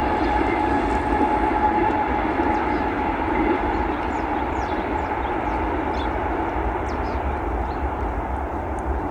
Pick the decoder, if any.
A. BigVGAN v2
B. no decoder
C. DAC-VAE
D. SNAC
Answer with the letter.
A